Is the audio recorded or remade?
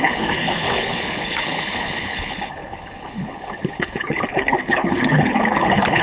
remade